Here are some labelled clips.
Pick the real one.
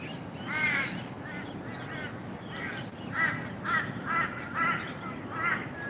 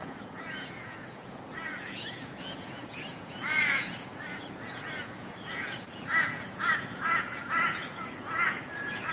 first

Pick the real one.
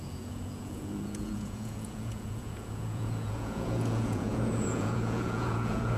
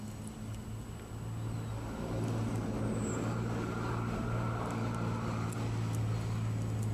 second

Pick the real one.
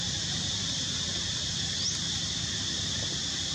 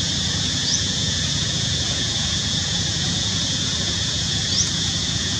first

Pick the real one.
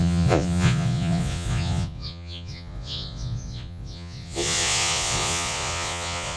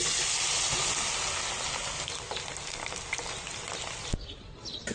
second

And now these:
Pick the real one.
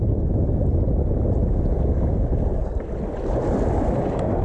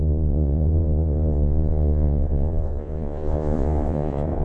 first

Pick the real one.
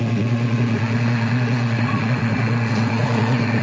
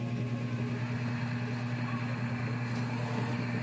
second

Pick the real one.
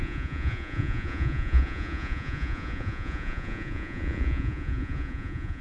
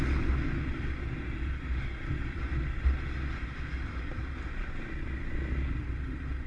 second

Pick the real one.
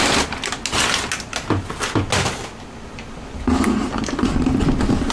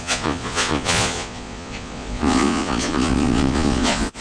first